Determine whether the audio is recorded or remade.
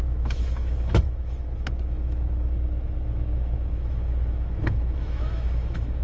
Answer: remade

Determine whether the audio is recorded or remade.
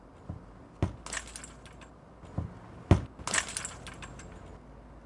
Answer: recorded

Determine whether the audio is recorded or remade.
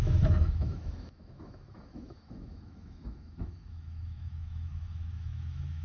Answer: remade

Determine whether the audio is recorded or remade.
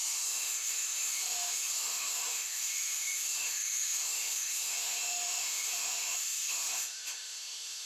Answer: remade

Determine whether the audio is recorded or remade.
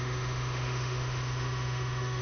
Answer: remade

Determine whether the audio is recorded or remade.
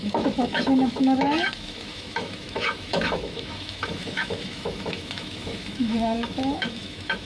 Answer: remade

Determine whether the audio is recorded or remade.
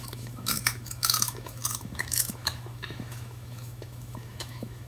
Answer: remade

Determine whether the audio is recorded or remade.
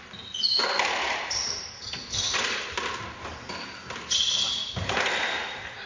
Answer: recorded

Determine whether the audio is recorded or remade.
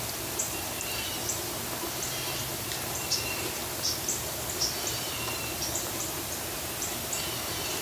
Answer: recorded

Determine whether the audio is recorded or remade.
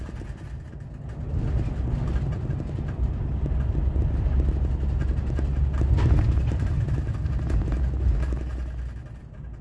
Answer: recorded